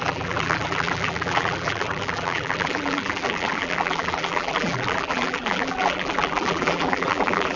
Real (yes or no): no